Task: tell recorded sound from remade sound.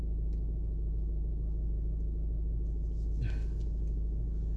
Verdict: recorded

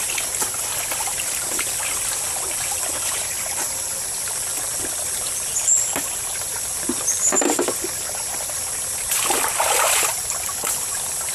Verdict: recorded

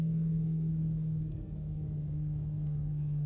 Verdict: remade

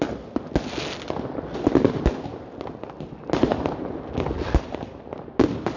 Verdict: recorded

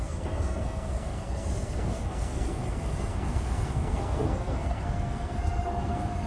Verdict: remade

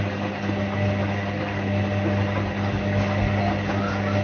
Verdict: recorded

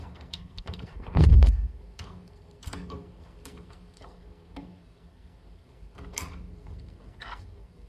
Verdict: remade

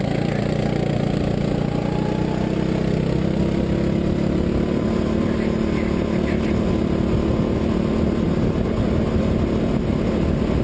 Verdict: recorded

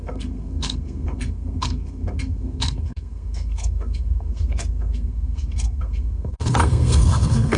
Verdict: remade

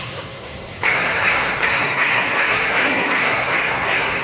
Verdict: remade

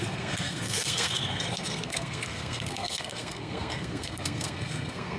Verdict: remade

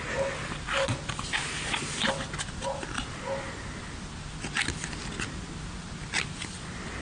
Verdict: recorded